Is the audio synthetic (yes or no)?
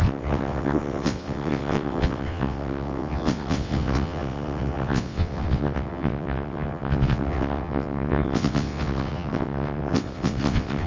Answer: yes